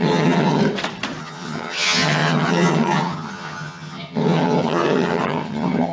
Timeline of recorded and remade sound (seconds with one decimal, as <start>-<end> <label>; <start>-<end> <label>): 0.0-0.6 remade; 0.6-1.2 recorded; 1.2-5.9 remade